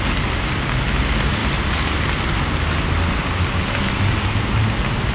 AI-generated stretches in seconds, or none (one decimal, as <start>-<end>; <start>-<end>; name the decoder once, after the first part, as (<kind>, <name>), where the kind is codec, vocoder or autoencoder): none